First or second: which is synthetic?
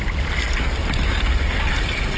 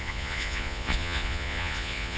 second